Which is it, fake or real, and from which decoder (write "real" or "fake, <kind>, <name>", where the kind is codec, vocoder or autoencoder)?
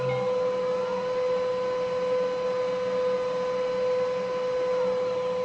real